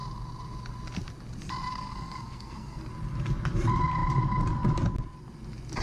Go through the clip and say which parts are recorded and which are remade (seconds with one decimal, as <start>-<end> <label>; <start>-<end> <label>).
0.0-1.7 recorded; 1.7-2.9 remade; 2.9-5.8 recorded